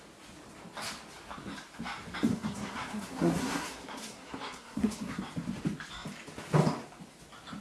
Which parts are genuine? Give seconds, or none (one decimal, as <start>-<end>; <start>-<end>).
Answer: 0.0-2.3; 5.2-7.6